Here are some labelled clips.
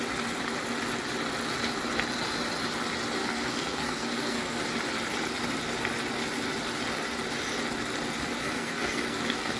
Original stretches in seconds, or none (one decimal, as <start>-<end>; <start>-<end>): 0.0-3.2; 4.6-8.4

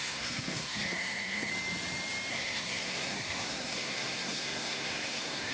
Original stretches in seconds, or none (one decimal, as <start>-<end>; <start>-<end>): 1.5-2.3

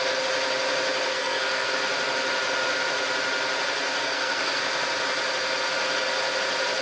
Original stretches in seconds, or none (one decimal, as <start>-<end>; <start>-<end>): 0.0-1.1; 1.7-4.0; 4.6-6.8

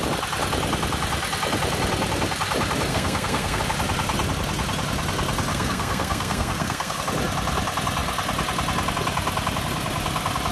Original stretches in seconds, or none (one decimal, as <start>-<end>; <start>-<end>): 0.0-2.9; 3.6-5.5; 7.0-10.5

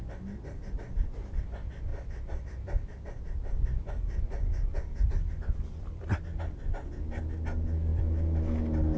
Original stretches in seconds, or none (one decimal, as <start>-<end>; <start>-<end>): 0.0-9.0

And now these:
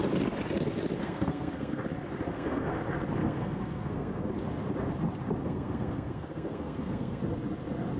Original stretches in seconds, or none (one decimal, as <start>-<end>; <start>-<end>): 0.0-1.0; 1.8-2.3; 2.8-3.2; 4.3-5.4; 7.2-8.0

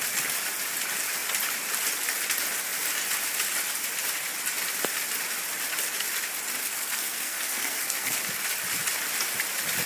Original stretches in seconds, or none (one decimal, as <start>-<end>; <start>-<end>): 0.0-6.6; 8.2-9.9